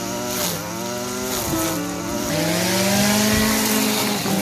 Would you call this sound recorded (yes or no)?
yes